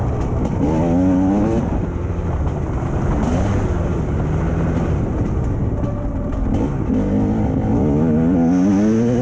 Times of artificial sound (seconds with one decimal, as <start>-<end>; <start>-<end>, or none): none